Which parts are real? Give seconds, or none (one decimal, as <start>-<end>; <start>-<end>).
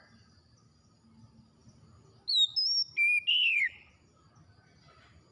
0.0-3.3; 3.9-5.3